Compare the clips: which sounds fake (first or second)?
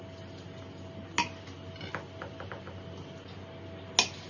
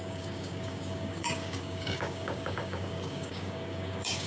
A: second